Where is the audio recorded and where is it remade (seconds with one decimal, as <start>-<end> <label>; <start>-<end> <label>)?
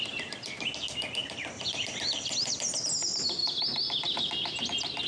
0.0-1.2 recorded; 1.2-2.5 remade; 2.5-5.1 recorded